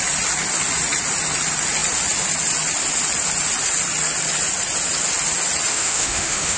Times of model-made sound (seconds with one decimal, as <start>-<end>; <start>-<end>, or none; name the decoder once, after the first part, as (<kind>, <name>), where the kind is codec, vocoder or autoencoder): 5.7-6.6 (autoencoder, DAC-VAE)

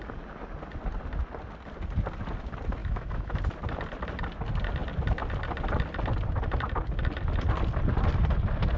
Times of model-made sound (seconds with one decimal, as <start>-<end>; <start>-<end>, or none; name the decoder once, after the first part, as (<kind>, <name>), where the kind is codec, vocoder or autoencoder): 2.8-3.4 (autoencoder, DAC-VAE)

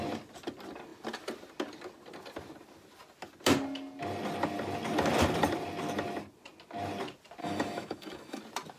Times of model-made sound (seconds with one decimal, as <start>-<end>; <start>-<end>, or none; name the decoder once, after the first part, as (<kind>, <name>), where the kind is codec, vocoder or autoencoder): 7.4-8.4 (autoencoder, DAC-VAE)

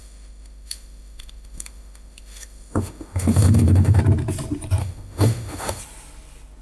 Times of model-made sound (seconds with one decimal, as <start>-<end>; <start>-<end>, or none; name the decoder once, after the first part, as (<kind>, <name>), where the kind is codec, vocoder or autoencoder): 0.0-4.0 (autoencoder, DAC-VAE); 4.8-5.8

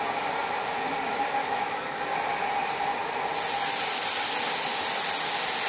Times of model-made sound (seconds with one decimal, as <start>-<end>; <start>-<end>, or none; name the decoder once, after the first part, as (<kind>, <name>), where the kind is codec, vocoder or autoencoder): 1.4-2.0 (autoencoder, DAC-VAE)

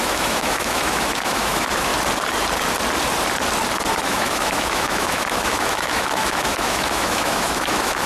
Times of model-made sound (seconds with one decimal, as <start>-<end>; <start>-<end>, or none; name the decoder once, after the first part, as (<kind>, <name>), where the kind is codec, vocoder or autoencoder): 0.0-1.9 (autoencoder, DAC-VAE); 3.9-8.1

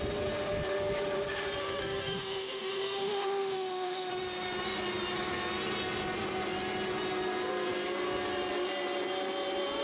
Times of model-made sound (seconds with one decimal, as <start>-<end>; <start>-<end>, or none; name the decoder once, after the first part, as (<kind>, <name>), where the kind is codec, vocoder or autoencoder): 1.6-4.1 (autoencoder, DAC-VAE)